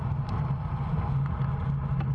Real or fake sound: real